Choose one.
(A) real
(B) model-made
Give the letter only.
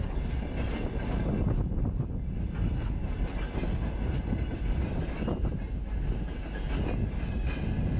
A